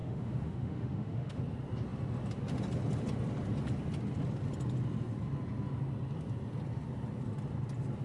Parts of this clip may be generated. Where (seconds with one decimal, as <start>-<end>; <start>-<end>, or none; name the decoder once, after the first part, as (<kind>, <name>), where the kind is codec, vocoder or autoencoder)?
0.0-1.4 (autoencoder, DAC-VAE)